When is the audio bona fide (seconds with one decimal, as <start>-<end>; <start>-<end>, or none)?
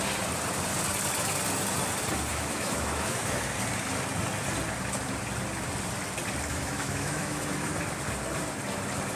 0.0-2.3; 3.4-6.5; 7.7-9.2